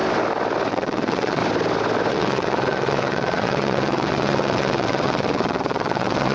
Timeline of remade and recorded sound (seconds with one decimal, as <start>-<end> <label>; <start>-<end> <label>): 0.0-0.7 recorded; 0.7-1.4 remade; 1.4-2.1 recorded; 2.1-6.3 remade